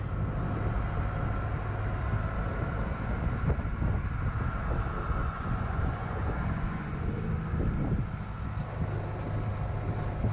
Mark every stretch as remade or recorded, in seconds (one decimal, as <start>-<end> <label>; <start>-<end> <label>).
0.0-5.2 recorded; 5.2-7.1 remade; 7.1-10.3 recorded